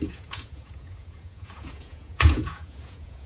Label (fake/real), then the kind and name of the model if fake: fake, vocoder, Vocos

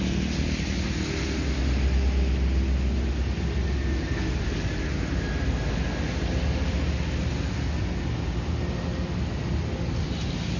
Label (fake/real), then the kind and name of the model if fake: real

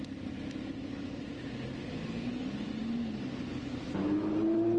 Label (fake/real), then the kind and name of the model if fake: real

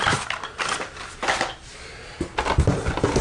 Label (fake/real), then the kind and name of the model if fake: real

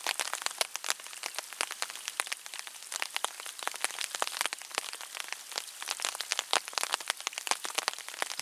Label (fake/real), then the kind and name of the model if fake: real